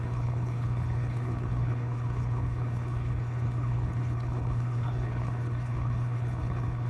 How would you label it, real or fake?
fake